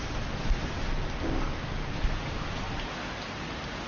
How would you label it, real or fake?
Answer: real